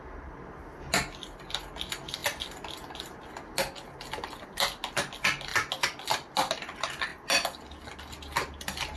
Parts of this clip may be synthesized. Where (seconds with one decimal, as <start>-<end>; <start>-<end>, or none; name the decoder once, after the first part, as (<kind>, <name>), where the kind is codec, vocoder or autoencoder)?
none